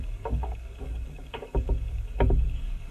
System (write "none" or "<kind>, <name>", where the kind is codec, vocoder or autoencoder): codec, DAC